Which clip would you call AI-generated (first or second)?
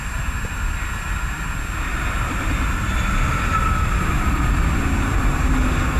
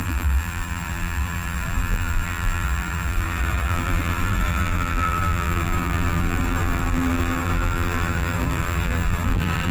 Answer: second